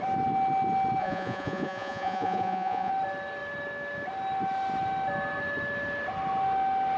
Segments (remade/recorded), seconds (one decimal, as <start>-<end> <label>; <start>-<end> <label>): 0.0-1.0 recorded; 1.0-2.9 remade; 2.9-7.0 recorded